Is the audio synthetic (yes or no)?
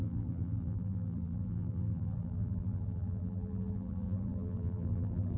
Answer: yes